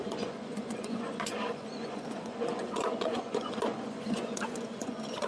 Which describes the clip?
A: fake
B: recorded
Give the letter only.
A